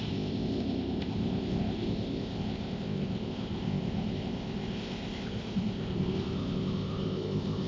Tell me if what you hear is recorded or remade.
remade